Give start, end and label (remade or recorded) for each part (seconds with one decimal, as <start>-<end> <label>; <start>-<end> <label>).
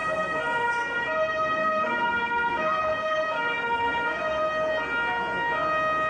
0.0-1.6 recorded; 1.6-4.4 remade; 4.4-6.1 recorded